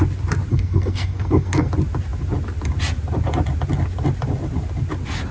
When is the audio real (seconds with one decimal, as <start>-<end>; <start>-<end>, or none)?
0.0-0.5; 1.7-5.3